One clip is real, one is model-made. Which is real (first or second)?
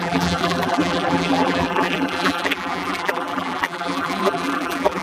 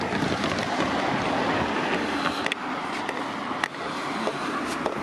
second